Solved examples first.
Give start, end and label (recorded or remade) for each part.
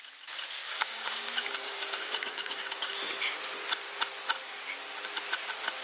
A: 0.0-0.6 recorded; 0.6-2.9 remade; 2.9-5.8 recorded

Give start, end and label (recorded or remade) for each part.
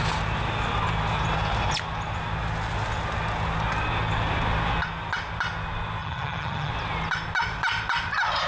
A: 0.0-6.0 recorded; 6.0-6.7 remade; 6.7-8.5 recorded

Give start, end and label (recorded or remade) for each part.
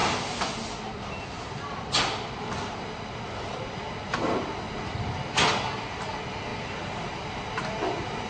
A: 0.0-8.3 recorded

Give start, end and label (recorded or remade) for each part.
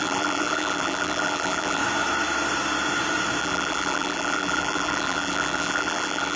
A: 0.0-1.8 remade; 1.8-3.4 recorded; 3.4-6.4 remade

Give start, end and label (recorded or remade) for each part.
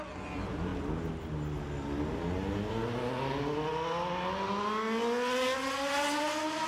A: 0.0-6.7 recorded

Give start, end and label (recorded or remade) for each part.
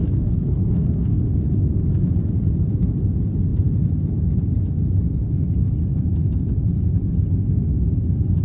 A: 0.0-1.2 remade; 1.2-8.4 recorded